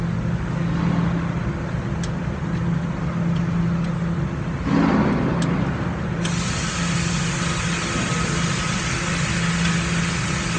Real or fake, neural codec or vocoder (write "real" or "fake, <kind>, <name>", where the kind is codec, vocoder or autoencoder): real